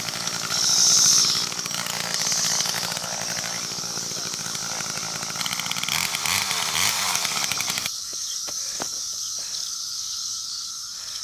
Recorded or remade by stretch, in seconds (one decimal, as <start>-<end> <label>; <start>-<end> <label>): 0.0-4.6 remade; 4.6-6.9 recorded; 6.9-11.2 remade